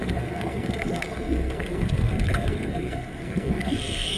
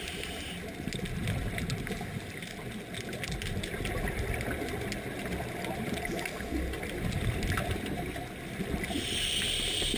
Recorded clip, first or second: second